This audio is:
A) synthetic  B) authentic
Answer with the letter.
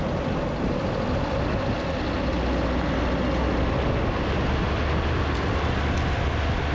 B